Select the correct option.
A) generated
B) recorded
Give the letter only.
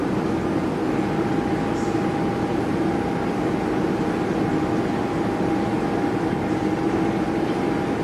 B